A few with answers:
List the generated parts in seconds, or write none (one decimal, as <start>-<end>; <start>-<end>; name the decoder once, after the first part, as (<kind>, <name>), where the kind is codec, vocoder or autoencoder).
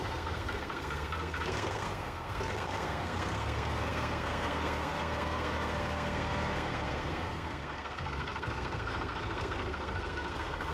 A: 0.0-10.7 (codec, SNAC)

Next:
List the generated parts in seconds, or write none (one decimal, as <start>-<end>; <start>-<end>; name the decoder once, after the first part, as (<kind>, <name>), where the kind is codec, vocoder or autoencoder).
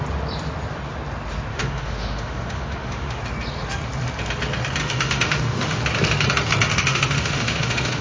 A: 1.5-3.2 (autoencoder, DAC-VAE); 4.8-5.8; 6.7-8.0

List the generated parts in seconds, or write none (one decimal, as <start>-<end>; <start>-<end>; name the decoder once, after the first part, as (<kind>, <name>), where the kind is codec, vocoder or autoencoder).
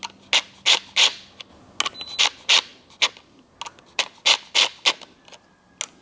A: none